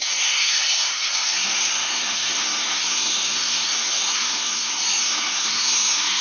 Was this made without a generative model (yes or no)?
no